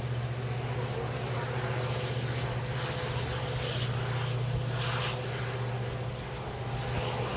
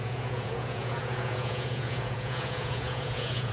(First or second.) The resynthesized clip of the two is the second